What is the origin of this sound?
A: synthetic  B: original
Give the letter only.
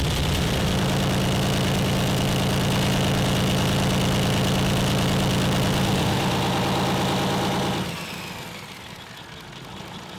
B